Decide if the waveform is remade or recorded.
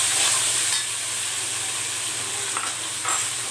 recorded